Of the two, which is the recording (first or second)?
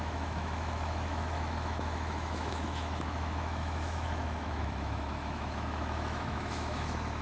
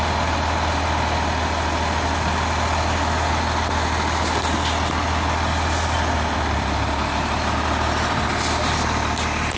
second